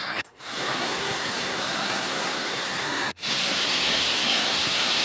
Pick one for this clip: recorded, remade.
remade